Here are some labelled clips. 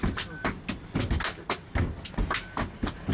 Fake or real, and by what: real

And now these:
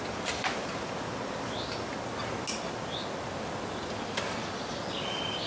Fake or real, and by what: real